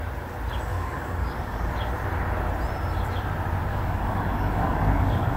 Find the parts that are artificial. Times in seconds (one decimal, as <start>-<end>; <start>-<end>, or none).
0.7-1.7; 3.7-5.4